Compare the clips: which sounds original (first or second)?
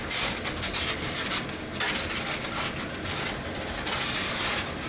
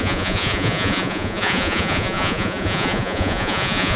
first